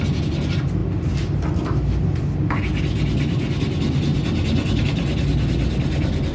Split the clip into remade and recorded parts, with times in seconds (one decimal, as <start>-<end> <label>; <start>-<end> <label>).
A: 0.0-6.3 recorded